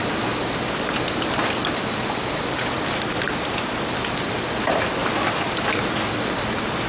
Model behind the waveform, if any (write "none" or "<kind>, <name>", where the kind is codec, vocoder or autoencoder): none